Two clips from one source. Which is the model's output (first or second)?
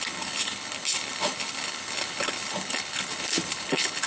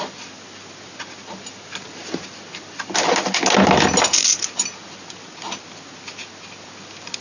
first